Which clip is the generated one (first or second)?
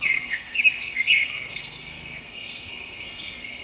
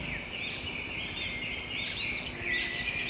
first